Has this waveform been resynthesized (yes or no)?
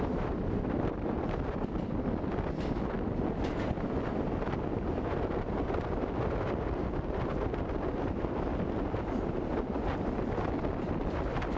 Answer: no